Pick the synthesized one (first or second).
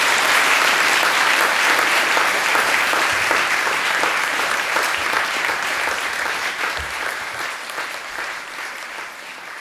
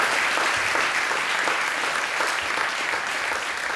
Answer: first